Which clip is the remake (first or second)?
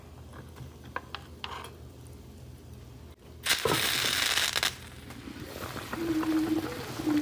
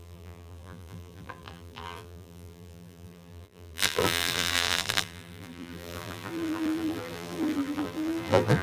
second